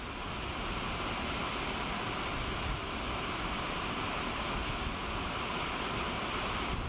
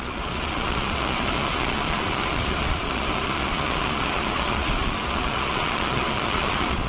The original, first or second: first